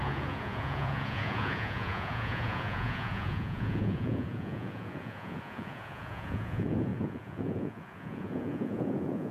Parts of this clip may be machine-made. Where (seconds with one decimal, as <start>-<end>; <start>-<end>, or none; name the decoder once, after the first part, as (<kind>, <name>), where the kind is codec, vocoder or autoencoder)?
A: 0.0-9.3 (vocoder, Vocos)

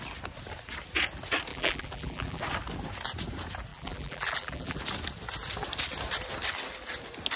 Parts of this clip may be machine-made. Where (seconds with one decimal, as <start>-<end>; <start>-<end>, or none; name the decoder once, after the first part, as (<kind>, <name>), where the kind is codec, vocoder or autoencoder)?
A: 1.5-2.4 (vocoder, BigVGAN v2); 3.7-4.8

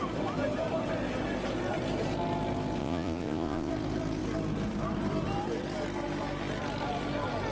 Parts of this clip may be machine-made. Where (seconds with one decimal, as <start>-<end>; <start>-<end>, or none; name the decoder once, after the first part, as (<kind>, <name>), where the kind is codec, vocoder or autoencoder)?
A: 2.8-3.7 (vocoder, Vocos)